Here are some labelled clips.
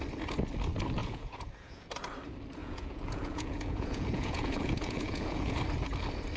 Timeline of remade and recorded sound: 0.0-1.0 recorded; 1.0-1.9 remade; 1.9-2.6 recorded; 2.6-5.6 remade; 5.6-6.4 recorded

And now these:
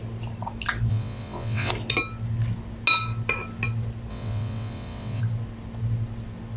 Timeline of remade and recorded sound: 0.0-0.9 recorded; 0.9-1.7 remade; 1.7-4.1 recorded; 4.1-5.2 remade; 5.2-6.6 recorded

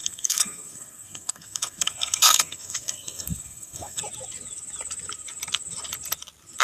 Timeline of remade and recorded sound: 0.0-4.0 remade; 4.0-6.6 recorded

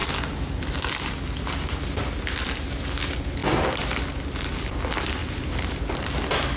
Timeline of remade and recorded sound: 0.0-5.2 recorded; 5.2-5.9 remade; 5.9-6.6 recorded

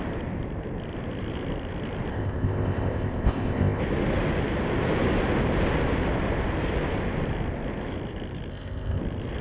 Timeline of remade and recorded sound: 0.0-2.1 recorded; 2.1-3.8 remade; 3.8-8.5 recorded; 8.5-9.0 remade; 9.0-9.4 recorded

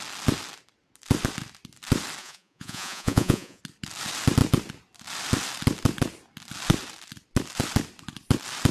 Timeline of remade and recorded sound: 0.0-2.2 recorded; 2.2-3.6 remade; 3.6-8.7 recorded

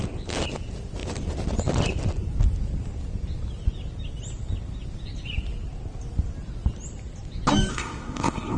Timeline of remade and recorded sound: 0.0-7.7 recorded; 7.7-8.6 remade